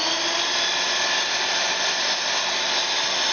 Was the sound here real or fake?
real